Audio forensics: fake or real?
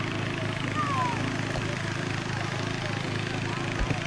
real